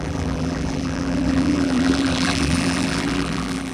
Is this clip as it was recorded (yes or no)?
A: no